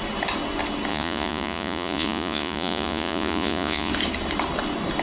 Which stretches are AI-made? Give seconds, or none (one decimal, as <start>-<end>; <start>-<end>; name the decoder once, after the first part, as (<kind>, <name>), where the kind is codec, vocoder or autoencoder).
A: 0.9-3.9 (vocoder, Vocos)